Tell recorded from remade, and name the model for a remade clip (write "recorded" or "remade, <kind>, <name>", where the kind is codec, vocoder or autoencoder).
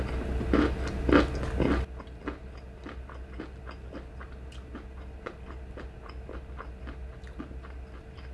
recorded